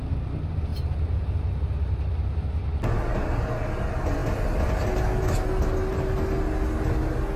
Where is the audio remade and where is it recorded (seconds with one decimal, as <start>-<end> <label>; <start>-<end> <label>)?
0.0-7.4 recorded